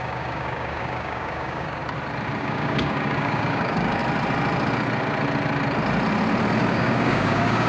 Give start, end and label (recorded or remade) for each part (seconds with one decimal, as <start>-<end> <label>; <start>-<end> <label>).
0.0-1.8 remade; 1.8-2.4 recorded; 2.4-4.0 remade; 4.0-6.7 recorded; 6.7-7.7 remade